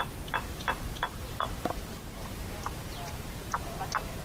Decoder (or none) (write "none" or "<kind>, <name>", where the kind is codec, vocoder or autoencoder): vocoder, BigVGAN v2